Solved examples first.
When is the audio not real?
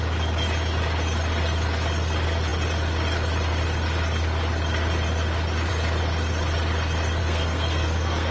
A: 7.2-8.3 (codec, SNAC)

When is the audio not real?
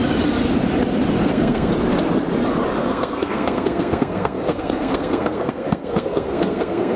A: 1.2-1.7 (codec, SNAC); 2.8-7.0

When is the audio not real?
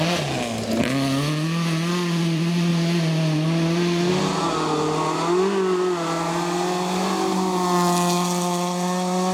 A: none